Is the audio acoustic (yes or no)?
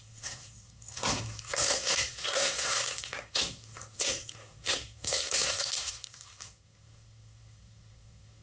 no